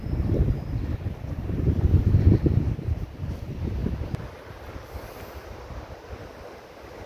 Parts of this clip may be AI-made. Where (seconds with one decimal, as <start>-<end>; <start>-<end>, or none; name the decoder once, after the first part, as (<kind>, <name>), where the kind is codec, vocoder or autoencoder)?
5.4-6.0 (vocoder, BigVGAN v2)